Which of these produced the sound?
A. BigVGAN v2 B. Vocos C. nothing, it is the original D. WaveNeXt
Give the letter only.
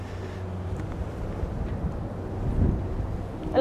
C